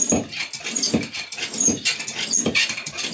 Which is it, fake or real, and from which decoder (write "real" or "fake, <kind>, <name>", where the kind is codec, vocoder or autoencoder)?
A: real